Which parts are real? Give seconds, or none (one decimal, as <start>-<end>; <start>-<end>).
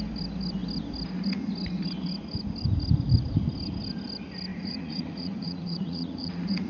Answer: 0.0-4.5